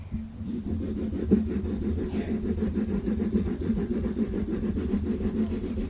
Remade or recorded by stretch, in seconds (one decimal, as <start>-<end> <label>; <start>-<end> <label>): 0.0-2.9 recorded; 2.9-4.7 remade; 4.7-5.9 recorded